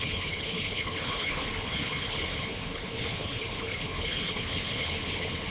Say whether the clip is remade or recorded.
remade